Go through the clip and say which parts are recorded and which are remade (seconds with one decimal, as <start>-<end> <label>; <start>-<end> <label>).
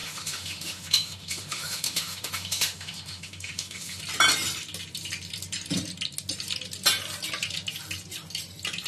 0.0-4.0 remade; 4.0-8.9 recorded